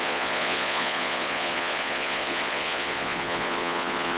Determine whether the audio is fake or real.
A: fake